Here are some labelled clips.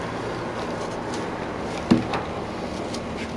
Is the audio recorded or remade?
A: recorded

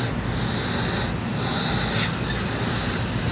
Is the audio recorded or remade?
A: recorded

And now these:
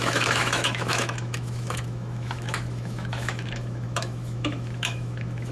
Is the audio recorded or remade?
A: remade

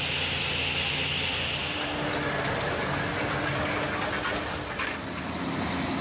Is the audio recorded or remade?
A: recorded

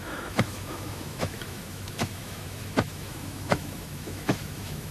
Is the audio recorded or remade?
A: remade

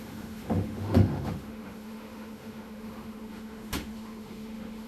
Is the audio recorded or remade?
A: remade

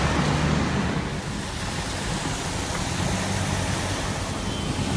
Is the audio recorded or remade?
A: recorded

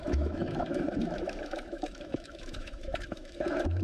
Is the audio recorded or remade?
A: remade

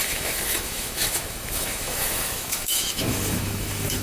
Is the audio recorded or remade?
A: remade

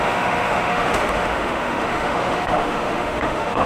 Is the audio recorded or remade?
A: remade